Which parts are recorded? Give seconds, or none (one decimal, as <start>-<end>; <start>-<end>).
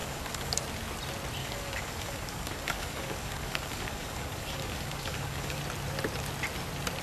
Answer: 0.6-1.4; 5.6-7.0